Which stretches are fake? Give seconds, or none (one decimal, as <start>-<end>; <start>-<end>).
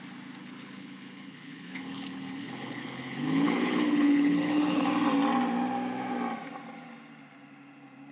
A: 0.4-4.9